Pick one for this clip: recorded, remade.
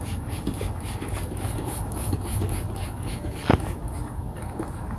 remade